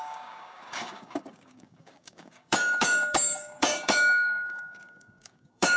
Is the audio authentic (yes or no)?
no